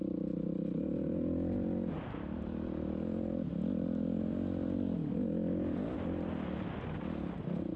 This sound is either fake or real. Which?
real